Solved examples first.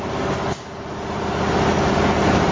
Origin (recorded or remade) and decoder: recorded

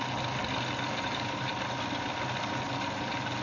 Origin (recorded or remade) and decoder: recorded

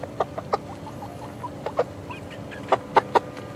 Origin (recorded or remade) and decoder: recorded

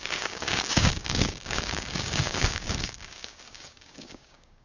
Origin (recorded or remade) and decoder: remade, codec, DAC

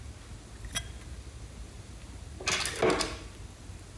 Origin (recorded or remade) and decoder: recorded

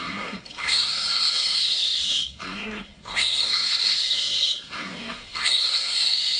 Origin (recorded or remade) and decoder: remade, codec, SNAC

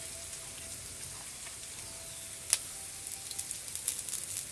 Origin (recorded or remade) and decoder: recorded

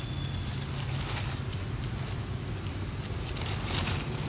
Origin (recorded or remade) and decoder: recorded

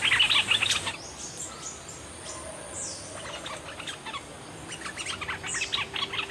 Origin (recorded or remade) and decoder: recorded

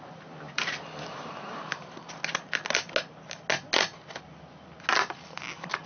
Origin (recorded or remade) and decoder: recorded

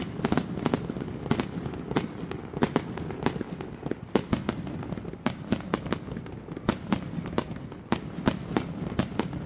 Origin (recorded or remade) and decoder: recorded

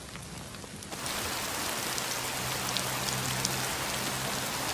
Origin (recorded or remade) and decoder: recorded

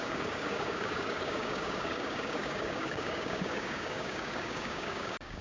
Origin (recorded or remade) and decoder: remade, codec, DAC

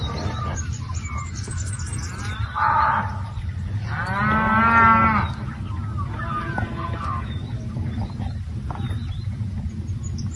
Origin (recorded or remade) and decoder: recorded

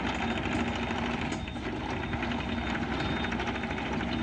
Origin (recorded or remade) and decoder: recorded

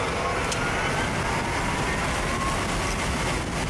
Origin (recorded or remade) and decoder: recorded